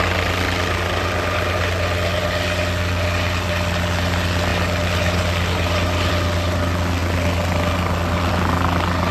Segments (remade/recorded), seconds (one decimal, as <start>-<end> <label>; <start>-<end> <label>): 0.0-9.1 recorded